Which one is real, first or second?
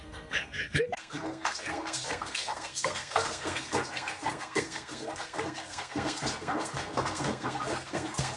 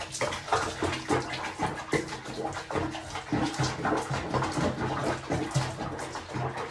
second